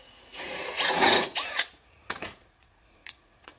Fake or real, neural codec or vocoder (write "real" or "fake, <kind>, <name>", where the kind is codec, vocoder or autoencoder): fake, vocoder, Vocos